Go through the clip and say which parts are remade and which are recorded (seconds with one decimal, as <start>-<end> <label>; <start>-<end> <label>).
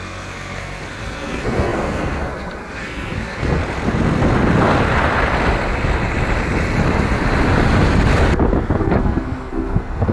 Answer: 0.0-3.6 remade; 3.6-8.8 recorded; 8.8-10.1 remade